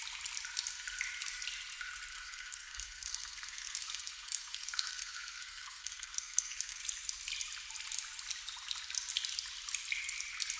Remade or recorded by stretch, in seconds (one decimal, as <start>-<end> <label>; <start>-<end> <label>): 0.0-2.1 recorded; 2.1-6.8 remade; 6.8-10.6 recorded